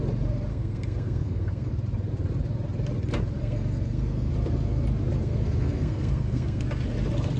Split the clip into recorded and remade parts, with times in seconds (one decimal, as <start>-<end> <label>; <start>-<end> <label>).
0.0-0.5 recorded; 0.5-1.7 remade; 1.7-3.4 recorded; 3.4-4.3 remade; 4.3-5.2 recorded; 5.2-6.6 remade; 6.6-7.4 recorded